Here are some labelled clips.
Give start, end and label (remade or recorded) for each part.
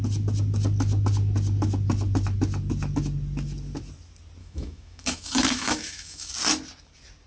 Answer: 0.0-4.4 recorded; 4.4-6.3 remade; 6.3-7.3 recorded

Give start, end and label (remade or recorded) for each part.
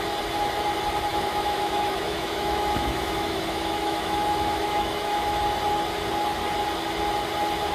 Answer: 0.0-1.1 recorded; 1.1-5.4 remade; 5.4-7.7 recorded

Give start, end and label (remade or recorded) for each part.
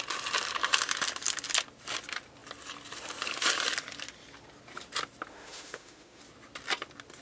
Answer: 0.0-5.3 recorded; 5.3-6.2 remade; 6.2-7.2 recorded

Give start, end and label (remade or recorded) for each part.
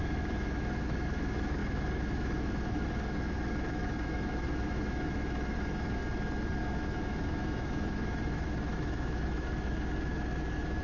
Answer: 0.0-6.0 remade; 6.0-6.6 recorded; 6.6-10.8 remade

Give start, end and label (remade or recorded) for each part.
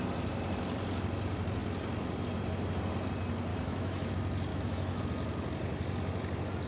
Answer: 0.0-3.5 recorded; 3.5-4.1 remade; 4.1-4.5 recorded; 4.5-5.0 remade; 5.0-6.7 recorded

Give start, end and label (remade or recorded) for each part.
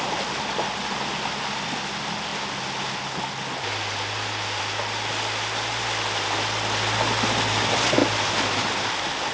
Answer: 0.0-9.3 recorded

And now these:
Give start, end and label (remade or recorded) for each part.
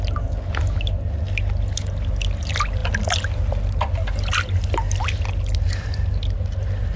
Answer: 0.0-7.0 recorded